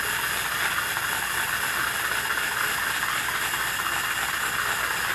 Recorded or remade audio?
recorded